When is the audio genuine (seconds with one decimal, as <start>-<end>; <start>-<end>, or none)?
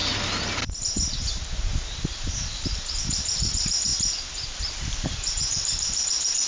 0.0-0.8; 3.9-4.7